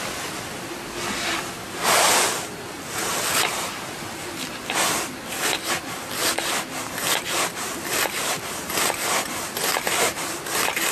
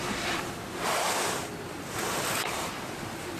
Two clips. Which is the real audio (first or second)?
first